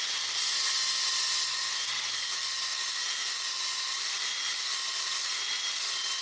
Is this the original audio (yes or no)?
yes